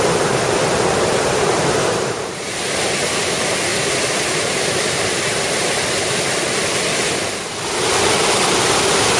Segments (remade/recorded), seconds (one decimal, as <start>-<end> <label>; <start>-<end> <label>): 0.0-1.1 recorded; 1.1-3.1 remade; 3.1-9.2 recorded